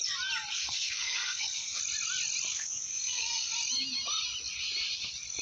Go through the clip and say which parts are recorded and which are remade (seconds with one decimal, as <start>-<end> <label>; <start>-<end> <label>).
0.0-0.5 recorded; 0.5-1.8 remade; 1.8-2.5 recorded; 2.5-3.5 remade; 3.5-5.4 recorded